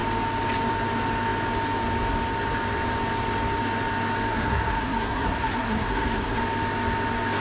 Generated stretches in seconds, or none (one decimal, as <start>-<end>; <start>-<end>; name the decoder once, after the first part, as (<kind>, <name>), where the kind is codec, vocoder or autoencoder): 4.3-6.4 (codec, SNAC)